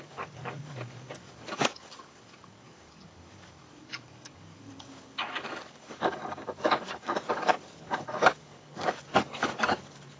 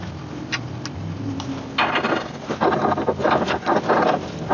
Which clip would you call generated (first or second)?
first